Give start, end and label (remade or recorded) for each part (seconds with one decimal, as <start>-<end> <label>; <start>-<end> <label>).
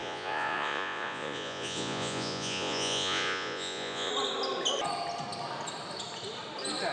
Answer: 0.0-4.1 remade; 4.1-6.9 recorded